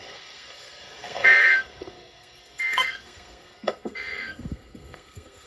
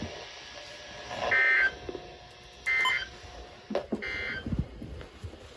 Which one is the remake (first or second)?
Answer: first